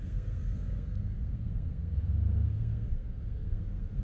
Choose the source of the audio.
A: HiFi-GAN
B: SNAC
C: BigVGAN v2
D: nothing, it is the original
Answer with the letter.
B